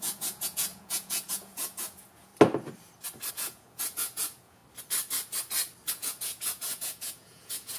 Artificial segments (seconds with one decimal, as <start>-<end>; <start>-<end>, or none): 0.0-2.3; 3.3-4.6; 5.9-7.8